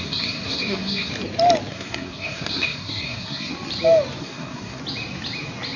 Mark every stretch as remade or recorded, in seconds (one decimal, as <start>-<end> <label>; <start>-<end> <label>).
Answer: 0.0-1.1 remade; 1.1-1.7 recorded; 1.7-3.5 remade; 3.5-4.2 recorded; 4.2-4.8 remade; 4.8-5.8 recorded

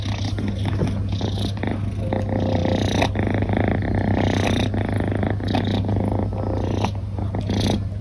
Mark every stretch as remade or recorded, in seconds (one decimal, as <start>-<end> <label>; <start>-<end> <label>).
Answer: 0.0-8.0 recorded

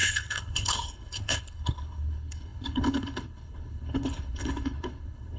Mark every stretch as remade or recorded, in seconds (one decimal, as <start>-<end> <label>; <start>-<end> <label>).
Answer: 0.0-5.4 remade

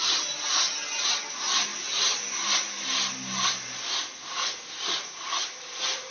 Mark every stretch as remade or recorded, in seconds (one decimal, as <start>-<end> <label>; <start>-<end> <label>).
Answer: 0.0-6.1 recorded

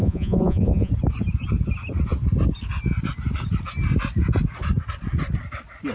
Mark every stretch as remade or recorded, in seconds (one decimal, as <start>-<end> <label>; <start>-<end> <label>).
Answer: 0.0-0.9 remade; 0.9-5.9 recorded

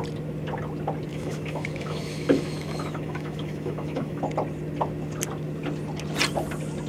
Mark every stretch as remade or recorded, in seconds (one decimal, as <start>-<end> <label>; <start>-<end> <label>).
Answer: 0.0-1.1 recorded; 1.1-4.2 remade; 4.2-6.9 recorded

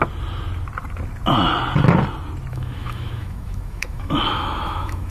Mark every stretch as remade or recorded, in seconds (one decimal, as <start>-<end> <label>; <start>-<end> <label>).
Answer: 0.0-2.5 recorded; 2.5-5.1 remade

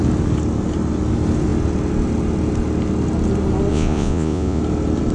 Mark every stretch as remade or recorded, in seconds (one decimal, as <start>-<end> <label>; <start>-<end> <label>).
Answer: 0.0-3.7 recorded; 3.7-4.6 remade; 4.6-5.1 recorded